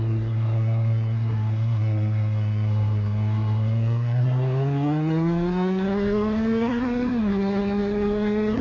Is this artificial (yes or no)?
yes